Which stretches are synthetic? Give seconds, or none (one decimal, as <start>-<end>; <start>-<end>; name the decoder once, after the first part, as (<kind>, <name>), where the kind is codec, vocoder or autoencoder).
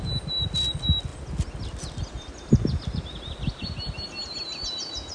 none